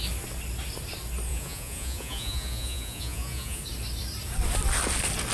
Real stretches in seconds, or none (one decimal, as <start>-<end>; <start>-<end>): 0.0-1.3; 3.6-5.3